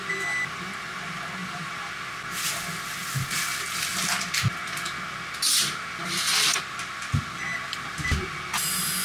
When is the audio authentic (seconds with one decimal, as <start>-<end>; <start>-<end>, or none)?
0.0-1.4; 1.9-9.0